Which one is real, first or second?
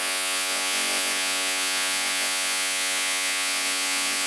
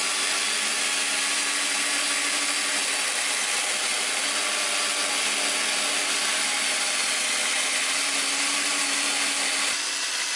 second